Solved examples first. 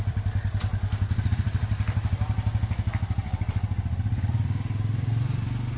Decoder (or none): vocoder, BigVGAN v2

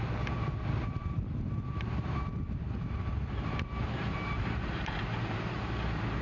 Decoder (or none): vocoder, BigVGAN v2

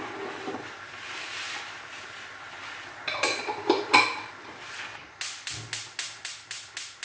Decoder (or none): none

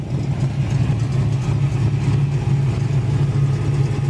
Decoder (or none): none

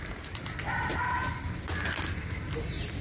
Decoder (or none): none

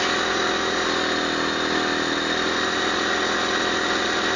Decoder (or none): none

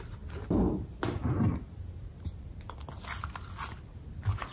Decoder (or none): none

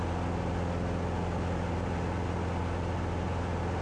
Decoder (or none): none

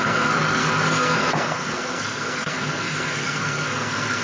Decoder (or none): codec, SNAC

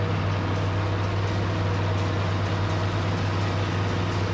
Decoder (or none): none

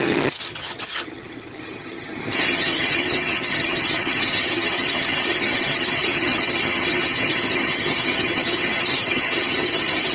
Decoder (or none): vocoder, HiFi-GAN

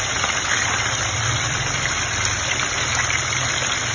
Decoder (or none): vocoder, BigVGAN v2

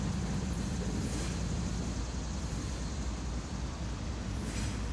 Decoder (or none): none